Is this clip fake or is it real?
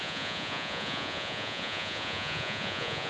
fake